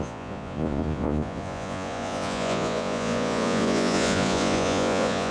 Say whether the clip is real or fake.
fake